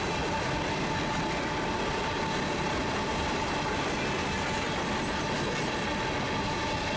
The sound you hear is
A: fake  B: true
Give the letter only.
B